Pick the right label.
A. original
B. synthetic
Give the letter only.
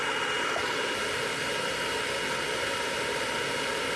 A